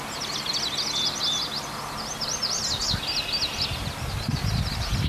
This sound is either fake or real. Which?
real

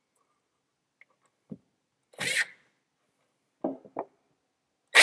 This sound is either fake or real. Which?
real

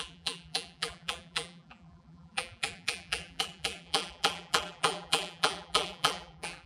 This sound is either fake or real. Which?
fake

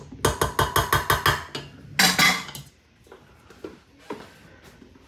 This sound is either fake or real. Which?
real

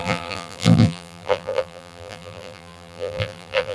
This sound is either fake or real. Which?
fake